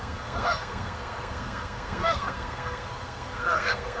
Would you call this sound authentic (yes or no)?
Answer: no